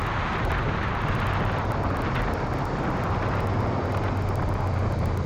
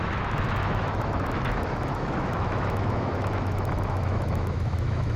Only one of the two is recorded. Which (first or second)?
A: first